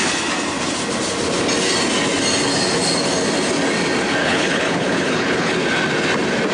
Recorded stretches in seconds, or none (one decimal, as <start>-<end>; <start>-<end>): 0.0-4.2; 5.5-6.5